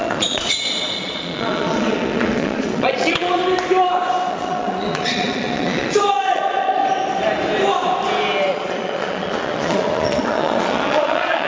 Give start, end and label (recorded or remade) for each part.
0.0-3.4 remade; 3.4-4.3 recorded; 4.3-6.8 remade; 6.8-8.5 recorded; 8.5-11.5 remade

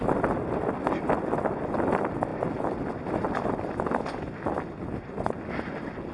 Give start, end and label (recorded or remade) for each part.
0.0-6.1 recorded

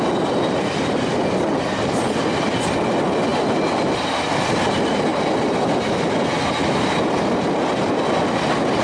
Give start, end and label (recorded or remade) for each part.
0.0-8.8 recorded